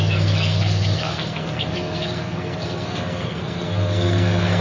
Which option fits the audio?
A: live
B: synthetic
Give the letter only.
B